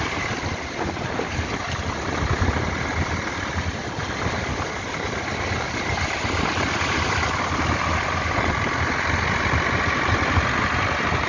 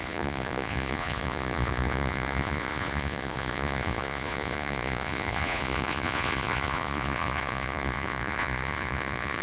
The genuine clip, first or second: first